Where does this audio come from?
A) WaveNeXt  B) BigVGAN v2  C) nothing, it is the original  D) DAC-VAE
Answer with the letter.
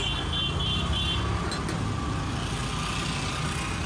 C